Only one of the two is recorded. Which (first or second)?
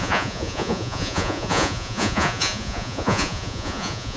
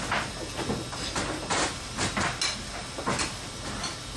second